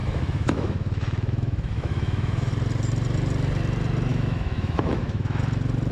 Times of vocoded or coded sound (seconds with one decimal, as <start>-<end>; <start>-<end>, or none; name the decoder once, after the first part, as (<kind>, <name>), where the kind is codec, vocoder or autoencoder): 0.0-2.5 (autoencoder, DAC-VAE); 4.1-5.4